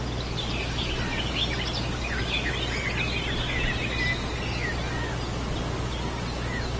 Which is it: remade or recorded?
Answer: recorded